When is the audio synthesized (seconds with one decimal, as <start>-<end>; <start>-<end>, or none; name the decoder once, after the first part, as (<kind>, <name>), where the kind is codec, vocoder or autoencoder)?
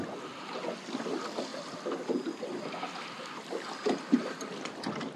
none